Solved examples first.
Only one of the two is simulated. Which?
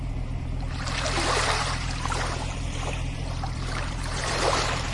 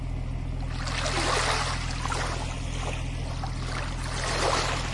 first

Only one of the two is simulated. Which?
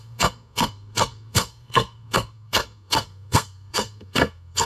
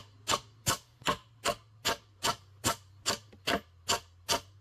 first